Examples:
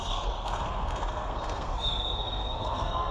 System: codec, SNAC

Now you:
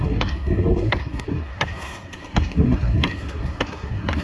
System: codec, SNAC